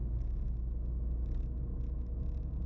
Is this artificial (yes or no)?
no